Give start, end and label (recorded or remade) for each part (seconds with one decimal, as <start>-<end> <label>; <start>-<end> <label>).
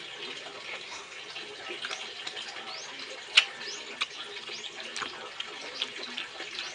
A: 0.0-0.7 recorded; 0.7-1.2 remade; 1.2-6.7 recorded